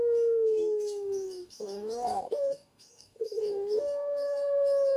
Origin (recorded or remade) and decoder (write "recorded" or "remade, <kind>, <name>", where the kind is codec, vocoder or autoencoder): remade, codec, DAC